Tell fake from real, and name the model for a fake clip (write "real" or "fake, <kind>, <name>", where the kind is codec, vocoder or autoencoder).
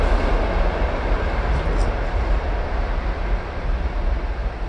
real